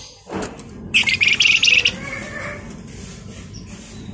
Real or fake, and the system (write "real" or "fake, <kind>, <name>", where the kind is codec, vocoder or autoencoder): real